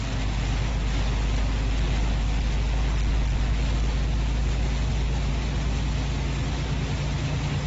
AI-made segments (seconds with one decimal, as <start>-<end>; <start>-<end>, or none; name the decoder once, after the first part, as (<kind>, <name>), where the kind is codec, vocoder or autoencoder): none